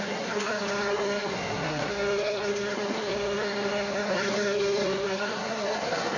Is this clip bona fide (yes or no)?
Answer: no